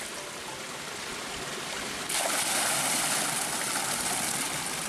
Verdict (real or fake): real